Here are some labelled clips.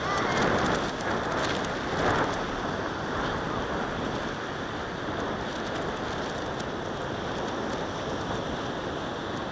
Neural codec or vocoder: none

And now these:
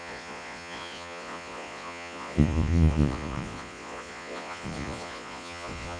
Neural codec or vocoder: vocoder, Vocos